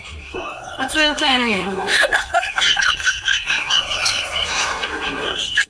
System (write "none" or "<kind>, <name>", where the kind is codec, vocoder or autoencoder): codec, SNAC